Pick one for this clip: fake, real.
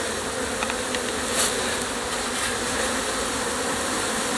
real